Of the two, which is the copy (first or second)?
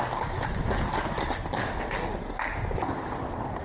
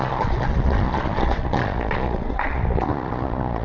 second